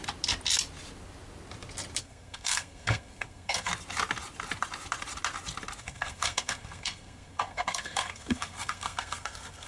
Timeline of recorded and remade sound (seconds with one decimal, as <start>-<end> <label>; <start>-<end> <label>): 0.0-2.0 recorded; 2.0-3.7 remade; 3.7-5.8 recorded; 5.8-9.7 remade